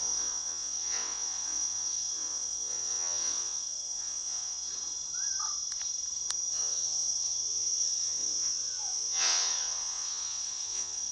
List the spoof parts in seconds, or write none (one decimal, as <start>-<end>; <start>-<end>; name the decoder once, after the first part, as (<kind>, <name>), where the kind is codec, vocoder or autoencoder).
0.0-4.7 (vocoder, WaveNeXt); 6.5-11.1